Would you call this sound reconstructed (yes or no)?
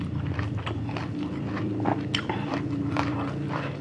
yes